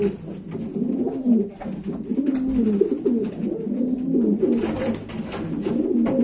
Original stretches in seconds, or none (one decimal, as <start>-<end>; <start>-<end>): 0.0-6.2